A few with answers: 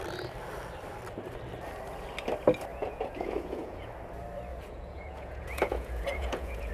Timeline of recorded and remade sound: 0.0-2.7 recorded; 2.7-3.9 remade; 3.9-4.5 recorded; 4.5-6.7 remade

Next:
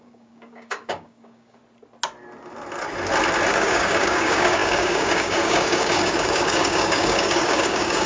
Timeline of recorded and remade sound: 0.0-1.6 remade; 1.6-3.5 recorded; 3.5-8.1 remade

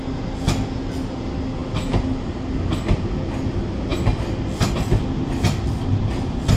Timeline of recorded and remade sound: 0.0-6.6 recorded

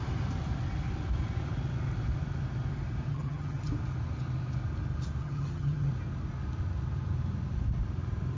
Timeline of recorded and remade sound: 0.0-3.1 recorded; 3.1-3.7 remade; 3.7-5.2 recorded; 5.2-5.9 remade; 5.9-8.4 recorded

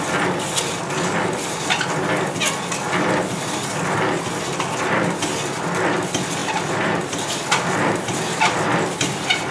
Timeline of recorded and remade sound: 0.0-9.5 recorded

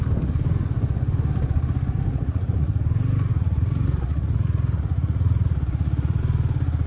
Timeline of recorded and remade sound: 0.0-2.1 recorded; 2.1-2.8 remade; 2.8-3.3 recorded; 3.3-6.2 remade; 6.2-6.9 recorded